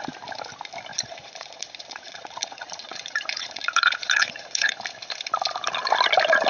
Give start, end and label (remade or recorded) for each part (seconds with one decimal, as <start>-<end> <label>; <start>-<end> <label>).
0.0-0.9 recorded; 0.9-4.8 remade; 4.8-6.5 recorded